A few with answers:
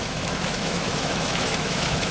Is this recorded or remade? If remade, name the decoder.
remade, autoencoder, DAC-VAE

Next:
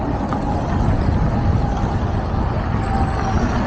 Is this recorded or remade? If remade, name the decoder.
recorded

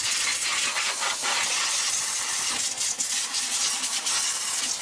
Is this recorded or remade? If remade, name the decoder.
recorded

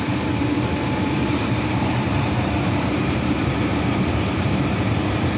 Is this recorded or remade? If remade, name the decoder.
remade, vocoder, BigVGAN v2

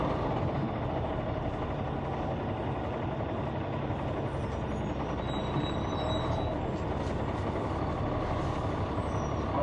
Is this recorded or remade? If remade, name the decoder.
recorded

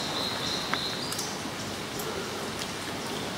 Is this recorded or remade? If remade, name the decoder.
recorded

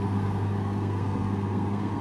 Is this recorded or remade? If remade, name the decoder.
remade, codec, SNAC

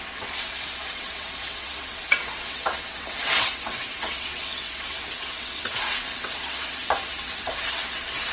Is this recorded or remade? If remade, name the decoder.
remade, vocoder, WaveNeXt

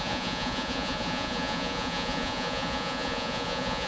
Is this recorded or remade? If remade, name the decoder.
remade, vocoder, Vocos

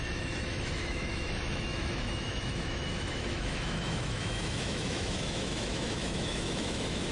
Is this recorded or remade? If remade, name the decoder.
remade, autoencoder, DAC-VAE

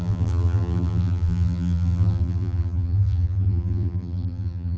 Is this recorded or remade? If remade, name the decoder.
remade, vocoder, BigVGAN v2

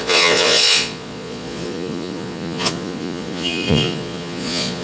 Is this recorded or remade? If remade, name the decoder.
remade, vocoder, Vocos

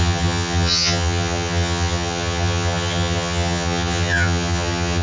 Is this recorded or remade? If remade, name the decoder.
remade, vocoder, HiFi-GAN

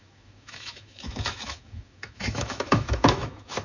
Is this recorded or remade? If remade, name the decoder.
remade, autoencoder, DAC-VAE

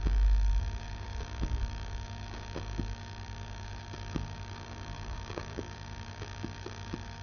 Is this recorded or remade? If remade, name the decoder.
remade, codec, DAC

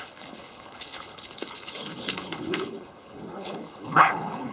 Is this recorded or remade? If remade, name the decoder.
remade, codec, HILCodec